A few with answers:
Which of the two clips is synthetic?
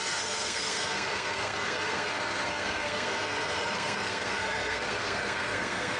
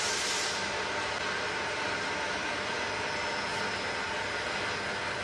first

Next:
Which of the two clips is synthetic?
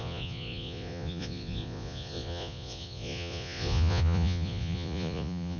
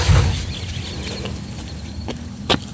first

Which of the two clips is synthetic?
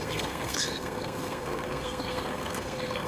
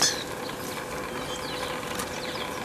first